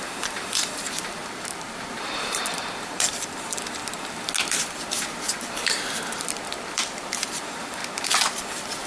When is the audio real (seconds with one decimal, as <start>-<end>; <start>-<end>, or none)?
3.8-6.6; 7.8-8.9